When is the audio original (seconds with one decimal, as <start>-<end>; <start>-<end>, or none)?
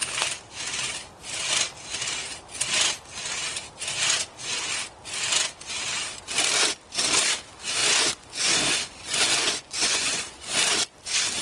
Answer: 0.0-7.8; 10.6-11.4